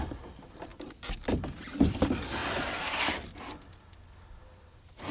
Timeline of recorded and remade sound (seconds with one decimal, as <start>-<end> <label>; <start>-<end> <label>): 0.0-0.7 remade; 0.7-1.9 recorded; 1.9-2.4 remade; 2.4-3.4 recorded; 3.4-3.9 remade; 3.9-4.5 recorded; 4.5-5.1 remade